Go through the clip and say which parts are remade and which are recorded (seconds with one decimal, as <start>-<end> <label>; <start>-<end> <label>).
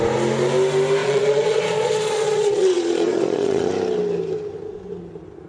0.0-1.0 recorded; 1.0-3.7 remade; 3.7-5.5 recorded